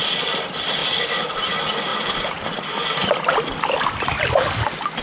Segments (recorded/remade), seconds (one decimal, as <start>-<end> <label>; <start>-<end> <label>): 0.0-5.0 recorded